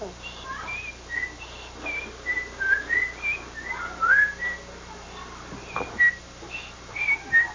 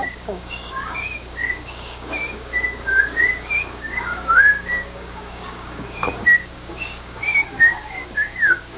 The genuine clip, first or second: first